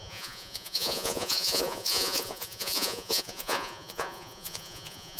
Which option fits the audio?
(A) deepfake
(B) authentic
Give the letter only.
A